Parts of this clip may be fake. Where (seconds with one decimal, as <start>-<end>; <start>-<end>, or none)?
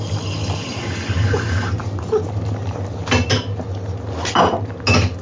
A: none